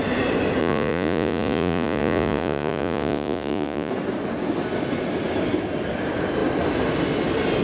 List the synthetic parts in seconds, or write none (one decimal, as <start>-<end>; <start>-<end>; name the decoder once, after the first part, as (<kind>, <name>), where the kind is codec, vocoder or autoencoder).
0.6-3.9 (vocoder, Vocos)